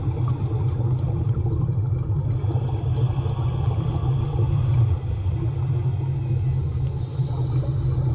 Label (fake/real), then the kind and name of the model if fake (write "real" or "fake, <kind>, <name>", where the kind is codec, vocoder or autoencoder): real